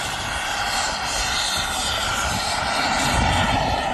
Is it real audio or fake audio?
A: fake